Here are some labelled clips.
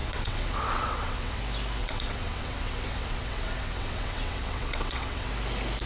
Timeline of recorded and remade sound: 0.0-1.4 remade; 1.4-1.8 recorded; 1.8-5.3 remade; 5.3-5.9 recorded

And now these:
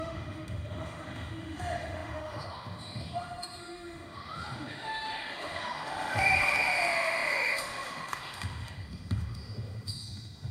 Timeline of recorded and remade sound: 0.0-10.5 remade

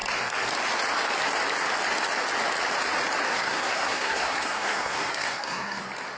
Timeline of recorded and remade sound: 0.0-3.3 recorded; 3.3-5.8 remade; 5.8-6.2 recorded

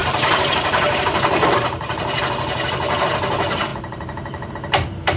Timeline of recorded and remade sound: 0.0-2.0 remade; 2.0-3.7 recorded; 3.7-4.5 remade; 4.5-5.2 recorded

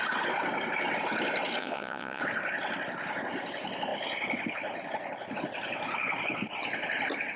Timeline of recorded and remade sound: 0.0-1.6 recorded; 1.6-2.2 remade; 2.2-7.4 recorded

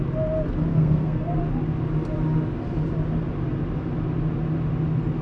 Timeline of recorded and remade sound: 0.0-0.7 recorded; 0.7-1.4 remade; 1.4-5.2 recorded

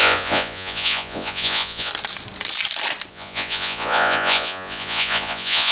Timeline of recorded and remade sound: 0.0-1.9 remade; 1.9-3.1 recorded; 3.1-5.7 remade